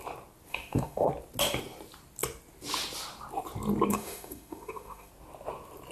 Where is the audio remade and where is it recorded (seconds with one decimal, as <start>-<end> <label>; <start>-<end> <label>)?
0.0-0.5 recorded; 0.5-1.1 remade; 1.1-3.9 recorded; 3.9-5.1 remade; 5.1-5.9 recorded